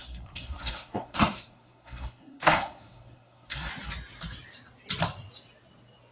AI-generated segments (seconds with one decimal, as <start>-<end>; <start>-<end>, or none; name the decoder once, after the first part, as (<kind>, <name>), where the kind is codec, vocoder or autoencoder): 0.0-3.7 (codec, SNAC)